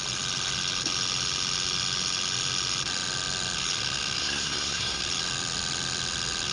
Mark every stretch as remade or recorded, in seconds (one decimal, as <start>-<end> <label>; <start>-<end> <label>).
0.0-4.2 recorded; 4.2-5.0 remade; 5.0-6.5 recorded